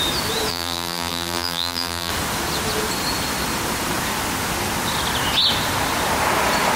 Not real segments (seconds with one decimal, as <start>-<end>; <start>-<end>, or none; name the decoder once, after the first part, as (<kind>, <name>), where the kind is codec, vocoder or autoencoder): 0.5-2.1 (vocoder, BigVGAN v2)